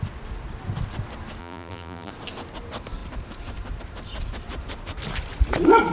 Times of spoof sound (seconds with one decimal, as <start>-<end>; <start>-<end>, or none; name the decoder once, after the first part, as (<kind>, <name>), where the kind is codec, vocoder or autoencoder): 1.4-2.1 (vocoder, BigVGAN v2)